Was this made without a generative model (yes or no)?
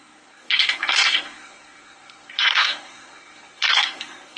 no